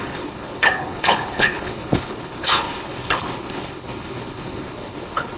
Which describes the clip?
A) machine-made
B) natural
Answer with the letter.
A